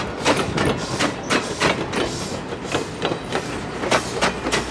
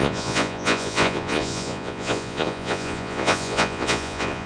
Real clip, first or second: first